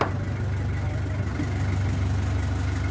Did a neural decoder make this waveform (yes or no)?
no